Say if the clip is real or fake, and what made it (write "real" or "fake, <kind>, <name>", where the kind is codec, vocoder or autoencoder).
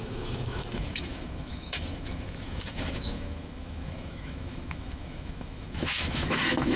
fake, autoencoder, DAC-VAE